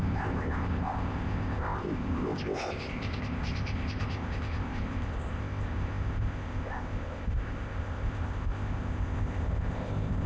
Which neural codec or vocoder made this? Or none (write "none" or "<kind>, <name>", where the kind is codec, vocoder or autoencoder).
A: codec, ZipCodec